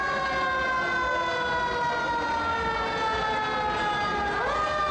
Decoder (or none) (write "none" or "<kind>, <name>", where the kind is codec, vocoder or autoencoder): none